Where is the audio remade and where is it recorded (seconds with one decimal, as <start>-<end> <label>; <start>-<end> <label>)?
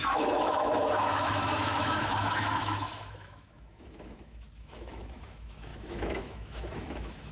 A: 0.0-7.3 remade